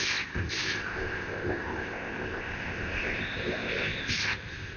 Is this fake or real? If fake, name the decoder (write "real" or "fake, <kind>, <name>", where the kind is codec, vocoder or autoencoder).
fake, codec, ZipCodec